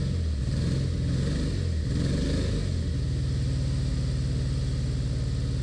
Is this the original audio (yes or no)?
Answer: yes